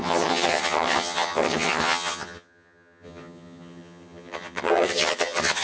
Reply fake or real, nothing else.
fake